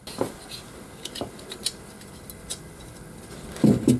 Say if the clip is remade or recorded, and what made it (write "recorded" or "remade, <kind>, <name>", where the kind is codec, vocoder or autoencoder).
recorded